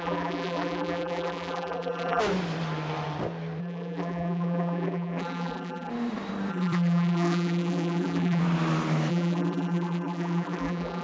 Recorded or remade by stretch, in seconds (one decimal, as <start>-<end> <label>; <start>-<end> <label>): 0.0-2.2 remade; 2.2-3.6 recorded; 3.6-5.9 remade; 5.9-6.5 recorded; 6.5-8.4 remade; 8.4-9.1 recorded; 9.1-11.0 remade